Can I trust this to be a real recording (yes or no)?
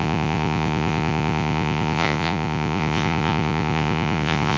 no